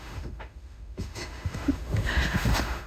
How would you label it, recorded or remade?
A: remade